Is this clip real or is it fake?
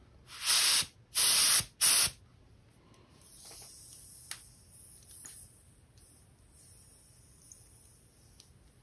real